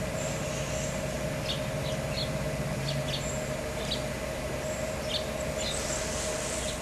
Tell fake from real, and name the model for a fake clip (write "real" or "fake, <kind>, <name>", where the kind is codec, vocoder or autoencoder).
real